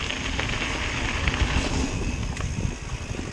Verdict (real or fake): real